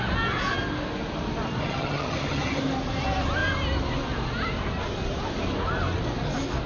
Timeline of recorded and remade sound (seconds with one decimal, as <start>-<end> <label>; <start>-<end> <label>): 0.0-1.6 recorded; 1.6-2.6 remade; 2.6-6.7 recorded